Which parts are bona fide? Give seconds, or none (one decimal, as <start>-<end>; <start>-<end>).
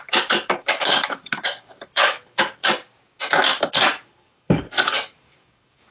2.6-3.7